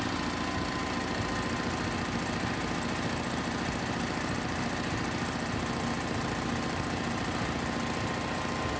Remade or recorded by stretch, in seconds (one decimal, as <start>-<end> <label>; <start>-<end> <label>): 0.0-8.8 recorded